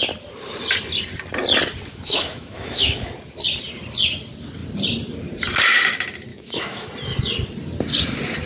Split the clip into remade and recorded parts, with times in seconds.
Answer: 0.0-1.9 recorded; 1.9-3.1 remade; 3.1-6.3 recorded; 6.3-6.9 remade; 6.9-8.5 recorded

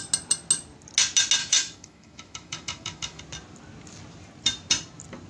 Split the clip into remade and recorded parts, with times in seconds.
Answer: 0.0-1.4 recorded; 1.4-3.2 remade; 3.2-5.3 recorded

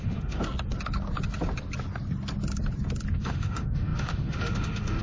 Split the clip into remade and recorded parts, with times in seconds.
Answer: 0.0-0.4 remade; 0.4-3.1 recorded; 3.1-5.0 remade

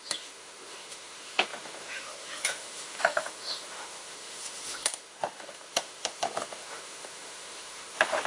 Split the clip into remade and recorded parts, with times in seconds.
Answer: 0.0-8.3 remade

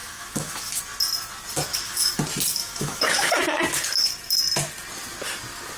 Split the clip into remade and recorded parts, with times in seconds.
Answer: 0.0-0.8 remade; 0.8-1.7 recorded; 1.7-2.2 remade; 2.2-2.6 recorded; 2.6-3.4 remade; 3.4-5.8 recorded

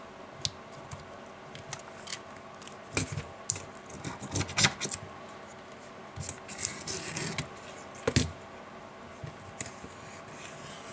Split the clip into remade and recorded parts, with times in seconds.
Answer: 0.0-10.9 recorded

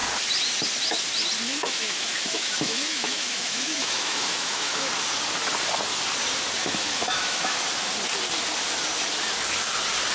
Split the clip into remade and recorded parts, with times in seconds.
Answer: 0.0-1.5 recorded; 1.5-4.9 remade; 4.9-6.6 recorded; 6.6-7.6 remade; 7.6-10.1 recorded

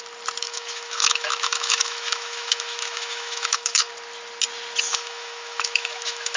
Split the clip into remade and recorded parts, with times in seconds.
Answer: 0.0-0.4 recorded; 0.4-3.9 remade; 3.9-4.9 recorded; 4.9-6.4 remade